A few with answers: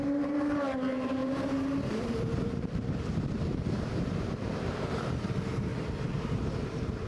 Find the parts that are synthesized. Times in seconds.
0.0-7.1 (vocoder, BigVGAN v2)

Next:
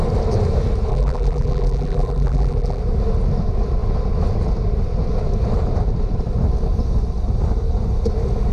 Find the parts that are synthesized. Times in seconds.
0.9-2.8 (vocoder, BigVGAN v2)